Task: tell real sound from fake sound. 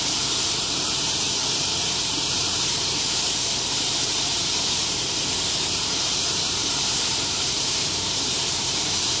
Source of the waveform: fake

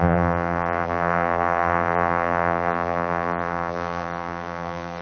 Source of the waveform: fake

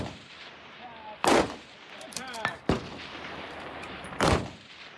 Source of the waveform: fake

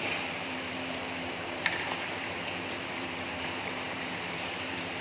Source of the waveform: fake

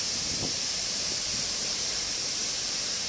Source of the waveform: fake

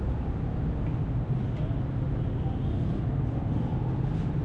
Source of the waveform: real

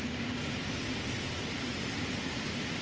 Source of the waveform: real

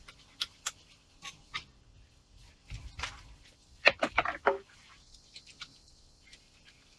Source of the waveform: real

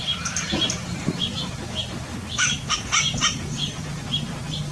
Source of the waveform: fake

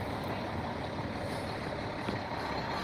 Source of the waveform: real